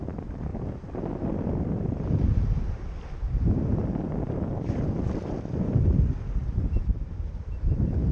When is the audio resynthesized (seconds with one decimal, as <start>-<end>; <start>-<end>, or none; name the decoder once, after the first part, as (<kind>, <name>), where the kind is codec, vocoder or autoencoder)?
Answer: 6.4-6.9 (vocoder, BigVGAN v2)

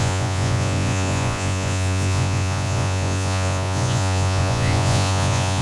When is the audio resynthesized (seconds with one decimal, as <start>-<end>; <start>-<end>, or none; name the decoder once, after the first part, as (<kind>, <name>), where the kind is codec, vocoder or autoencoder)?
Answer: 0.0-5.6 (vocoder, Vocos)

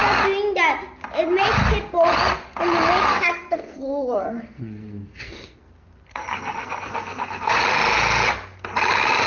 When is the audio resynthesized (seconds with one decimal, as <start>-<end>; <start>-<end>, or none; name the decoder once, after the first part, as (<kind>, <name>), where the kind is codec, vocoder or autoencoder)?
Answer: 3.1-7.6 (codec, SNAC)

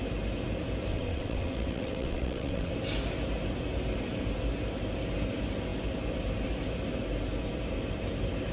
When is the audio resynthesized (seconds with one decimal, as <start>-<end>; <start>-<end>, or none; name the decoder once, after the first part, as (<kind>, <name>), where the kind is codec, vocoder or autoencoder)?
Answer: 0.9-2.7 (vocoder, WaveNeXt)

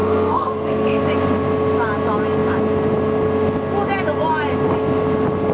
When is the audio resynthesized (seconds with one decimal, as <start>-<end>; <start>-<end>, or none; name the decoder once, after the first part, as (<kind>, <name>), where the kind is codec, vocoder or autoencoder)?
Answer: 0.0-1.0 (codec, SNAC)

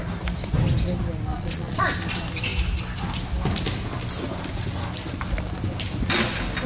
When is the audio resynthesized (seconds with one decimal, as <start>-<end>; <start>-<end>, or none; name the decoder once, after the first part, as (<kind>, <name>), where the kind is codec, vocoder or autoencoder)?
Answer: 1.3-1.8 (vocoder, Vocos)

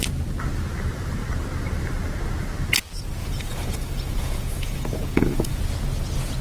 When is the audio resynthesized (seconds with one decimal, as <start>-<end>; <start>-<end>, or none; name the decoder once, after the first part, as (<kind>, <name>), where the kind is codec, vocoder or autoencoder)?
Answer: 3.2-5.6 (vocoder, Vocos)

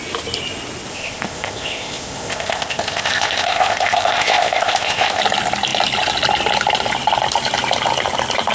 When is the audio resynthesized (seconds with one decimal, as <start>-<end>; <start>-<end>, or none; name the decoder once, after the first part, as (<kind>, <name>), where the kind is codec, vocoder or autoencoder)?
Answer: 0.9-5.2 (codec, ZipCodec)